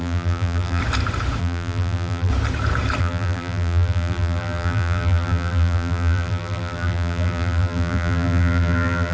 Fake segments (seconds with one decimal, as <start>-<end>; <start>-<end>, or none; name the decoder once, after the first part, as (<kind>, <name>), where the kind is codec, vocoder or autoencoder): 0.0-0.8 (vocoder, BigVGAN v2); 1.4-2.3; 3.0-9.1